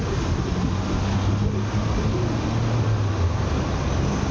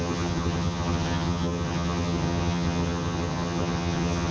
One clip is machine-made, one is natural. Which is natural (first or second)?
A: first